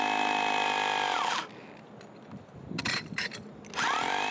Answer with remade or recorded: recorded